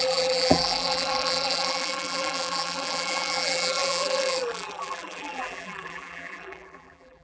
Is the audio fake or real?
fake